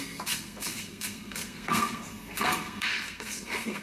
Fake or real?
fake